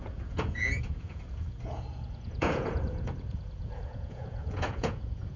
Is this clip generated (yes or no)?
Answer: yes